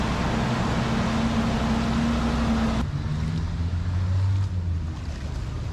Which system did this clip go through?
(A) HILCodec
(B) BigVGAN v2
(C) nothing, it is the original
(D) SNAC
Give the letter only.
C